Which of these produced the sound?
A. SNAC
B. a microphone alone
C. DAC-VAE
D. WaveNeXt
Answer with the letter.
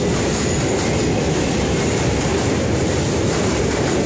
B